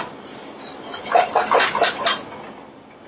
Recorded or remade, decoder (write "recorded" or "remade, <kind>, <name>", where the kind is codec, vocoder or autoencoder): recorded